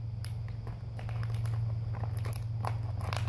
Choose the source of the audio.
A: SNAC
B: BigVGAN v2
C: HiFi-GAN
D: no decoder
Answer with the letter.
D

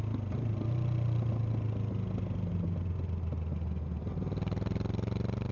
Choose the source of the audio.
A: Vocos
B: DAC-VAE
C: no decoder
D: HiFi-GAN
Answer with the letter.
C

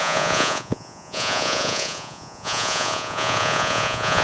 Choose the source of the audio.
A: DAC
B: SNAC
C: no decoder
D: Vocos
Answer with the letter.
D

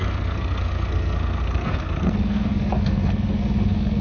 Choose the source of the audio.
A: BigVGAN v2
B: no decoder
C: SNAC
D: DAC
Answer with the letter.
C